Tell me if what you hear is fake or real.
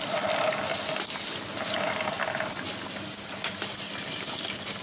real